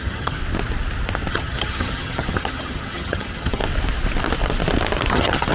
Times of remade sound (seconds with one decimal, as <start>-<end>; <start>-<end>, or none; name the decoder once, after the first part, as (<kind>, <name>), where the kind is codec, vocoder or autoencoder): 0.0-0.4 (vocoder, HiFi-GAN); 1.3-3.6; 5.1-5.5

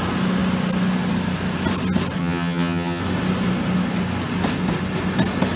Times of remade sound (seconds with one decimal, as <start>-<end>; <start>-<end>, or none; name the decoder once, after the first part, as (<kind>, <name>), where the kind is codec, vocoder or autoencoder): 2.2-3.0 (vocoder, HiFi-GAN)